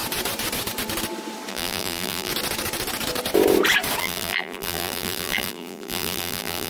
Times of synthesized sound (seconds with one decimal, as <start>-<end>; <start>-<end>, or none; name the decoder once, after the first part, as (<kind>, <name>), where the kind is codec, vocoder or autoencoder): 1.5-2.3 (vocoder, BigVGAN v2); 4.0-6.7